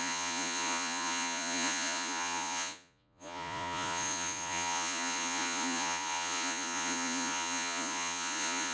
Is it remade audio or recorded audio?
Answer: remade